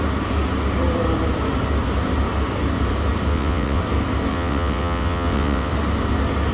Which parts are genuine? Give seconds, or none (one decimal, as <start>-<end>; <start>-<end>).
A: 0.0-3.3; 3.8-4.3; 5.7-6.5